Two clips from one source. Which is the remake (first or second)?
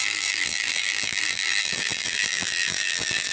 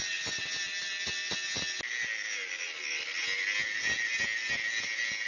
first